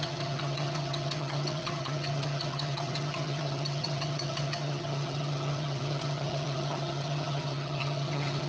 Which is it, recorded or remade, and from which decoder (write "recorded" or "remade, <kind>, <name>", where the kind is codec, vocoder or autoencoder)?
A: remade, vocoder, HiFi-GAN